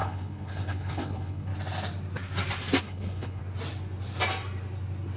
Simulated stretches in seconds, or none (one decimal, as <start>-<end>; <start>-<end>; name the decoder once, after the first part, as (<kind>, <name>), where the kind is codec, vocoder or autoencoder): 0.0-1.5 (codec, HILCodec); 2.8-3.4